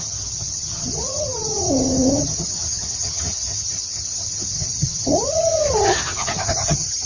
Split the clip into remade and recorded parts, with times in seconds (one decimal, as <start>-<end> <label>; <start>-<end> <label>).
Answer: 0.0-7.1 remade